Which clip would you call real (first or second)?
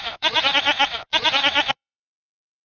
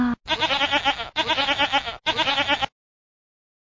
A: second